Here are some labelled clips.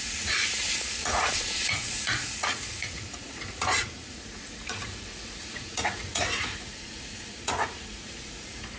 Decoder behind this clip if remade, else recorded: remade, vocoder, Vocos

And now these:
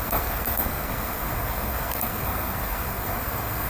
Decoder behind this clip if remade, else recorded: remade, codec, SNAC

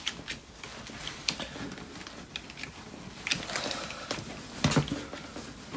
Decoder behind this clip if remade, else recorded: recorded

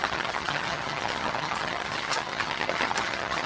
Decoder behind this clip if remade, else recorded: remade, vocoder, HiFi-GAN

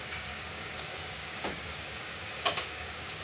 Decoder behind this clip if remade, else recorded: remade, codec, DAC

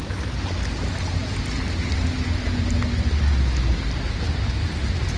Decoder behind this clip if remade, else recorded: recorded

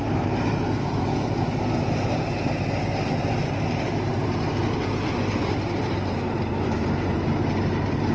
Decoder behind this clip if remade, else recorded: recorded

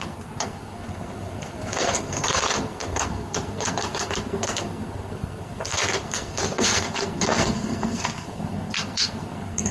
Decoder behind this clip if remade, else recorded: remade, codec, SNAC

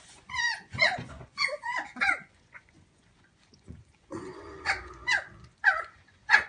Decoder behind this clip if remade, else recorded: remade, vocoder, Vocos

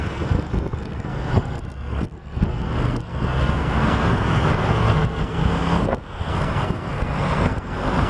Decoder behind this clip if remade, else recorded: remade, codec, SNAC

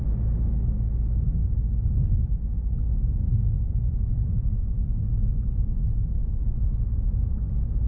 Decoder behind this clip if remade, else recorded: recorded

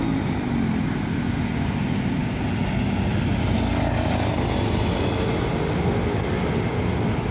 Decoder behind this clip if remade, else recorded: recorded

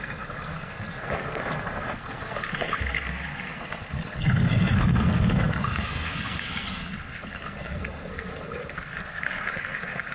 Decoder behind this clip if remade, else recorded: remade, codec, SNAC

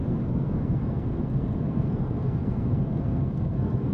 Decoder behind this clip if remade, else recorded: remade, codec, SNAC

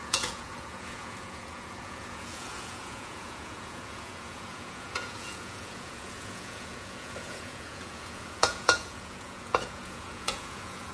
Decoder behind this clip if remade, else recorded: remade, vocoder, Vocos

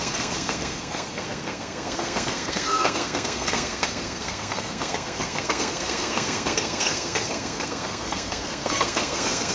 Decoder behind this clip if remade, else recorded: remade, codec, SNAC